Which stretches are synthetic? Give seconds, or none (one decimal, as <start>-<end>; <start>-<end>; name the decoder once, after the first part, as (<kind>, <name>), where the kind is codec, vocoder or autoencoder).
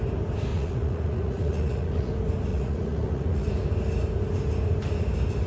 0.5-2.1 (vocoder, Vocos); 2.5-3.5